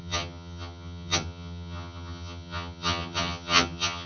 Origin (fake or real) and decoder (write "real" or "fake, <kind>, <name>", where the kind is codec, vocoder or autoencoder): fake, vocoder, HiFi-GAN